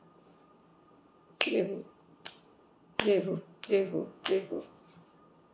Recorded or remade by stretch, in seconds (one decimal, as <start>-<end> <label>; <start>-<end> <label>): 0.0-3.7 recorded; 3.7-4.8 remade; 4.8-5.5 recorded

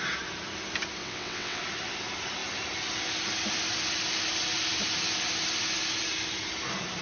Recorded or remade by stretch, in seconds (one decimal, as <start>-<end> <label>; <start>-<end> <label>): 0.0-1.0 recorded; 1.0-1.6 remade; 1.6-7.0 recorded

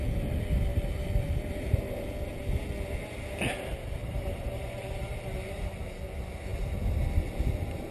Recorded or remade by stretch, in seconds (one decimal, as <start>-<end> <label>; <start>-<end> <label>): 0.0-0.7 recorded; 0.7-1.9 remade; 1.9-4.0 recorded; 4.0-5.9 remade; 5.9-7.9 recorded

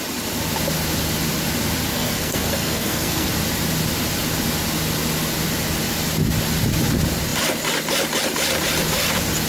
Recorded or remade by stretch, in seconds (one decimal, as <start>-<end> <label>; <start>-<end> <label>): 0.0-1.9 recorded; 1.9-3.3 remade; 3.3-9.5 recorded

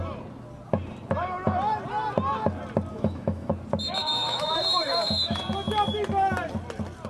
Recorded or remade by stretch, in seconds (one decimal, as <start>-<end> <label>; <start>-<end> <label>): 0.0-2.9 recorded; 2.9-3.5 remade; 3.5-4.0 recorded; 4.0-5.4 remade; 5.4-7.1 recorded

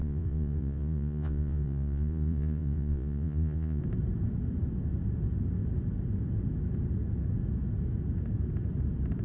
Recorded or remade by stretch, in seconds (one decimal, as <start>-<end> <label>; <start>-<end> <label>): 0.0-3.8 remade; 3.8-9.2 recorded